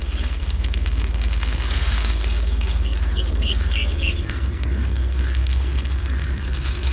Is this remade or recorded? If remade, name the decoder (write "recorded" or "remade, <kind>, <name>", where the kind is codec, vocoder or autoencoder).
remade, codec, SNAC